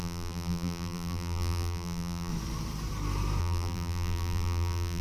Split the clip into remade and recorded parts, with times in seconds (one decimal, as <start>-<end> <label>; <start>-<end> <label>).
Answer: 0.0-2.3 remade; 2.3-3.4 recorded; 3.4-5.0 remade

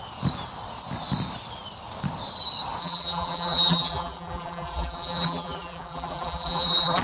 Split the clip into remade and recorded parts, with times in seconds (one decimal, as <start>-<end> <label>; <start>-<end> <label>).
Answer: 0.0-2.8 recorded; 2.8-7.0 remade

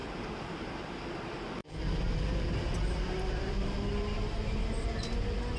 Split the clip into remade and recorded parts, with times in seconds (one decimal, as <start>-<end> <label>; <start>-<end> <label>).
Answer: 0.0-0.7 remade; 0.7-1.6 recorded; 1.6-3.5 remade; 3.5-5.6 recorded

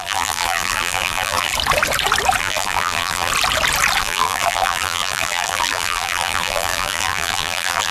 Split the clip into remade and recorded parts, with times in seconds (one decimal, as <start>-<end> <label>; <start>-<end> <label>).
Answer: 0.0-1.5 remade; 1.5-2.4 recorded; 2.4-3.3 remade; 3.3-4.0 recorded; 4.0-7.9 remade

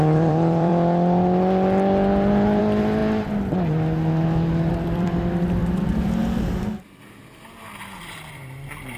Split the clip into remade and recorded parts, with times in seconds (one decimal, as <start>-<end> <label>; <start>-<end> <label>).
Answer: 0.0-0.7 remade; 0.7-2.6 recorded; 2.6-3.0 remade; 3.0-4.7 recorded; 4.7-6.2 remade; 6.2-8.0 recorded; 8.0-9.0 remade

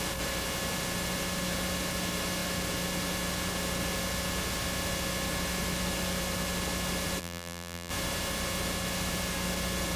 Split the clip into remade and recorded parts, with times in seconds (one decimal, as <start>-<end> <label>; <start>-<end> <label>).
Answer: 0.0-7.2 recorded; 7.2-7.9 remade; 7.9-10.0 recorded